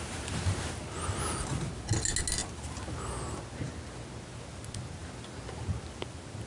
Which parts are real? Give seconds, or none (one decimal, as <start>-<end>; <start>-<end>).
0.0-6.5